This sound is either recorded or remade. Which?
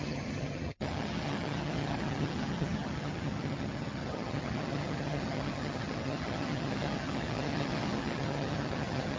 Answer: remade